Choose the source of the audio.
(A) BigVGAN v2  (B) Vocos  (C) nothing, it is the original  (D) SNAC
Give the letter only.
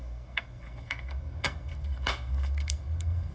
D